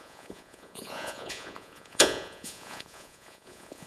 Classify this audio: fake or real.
fake